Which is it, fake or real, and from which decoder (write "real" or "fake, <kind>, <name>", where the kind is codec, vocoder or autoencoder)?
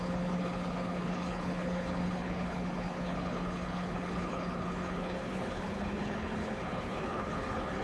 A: fake, codec, HILCodec